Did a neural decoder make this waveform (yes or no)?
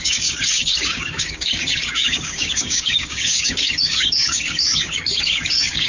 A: yes